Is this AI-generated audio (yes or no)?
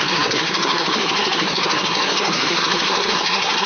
yes